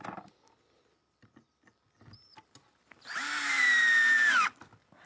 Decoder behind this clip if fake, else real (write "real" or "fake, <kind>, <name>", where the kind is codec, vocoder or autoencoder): fake, vocoder, BigVGAN v2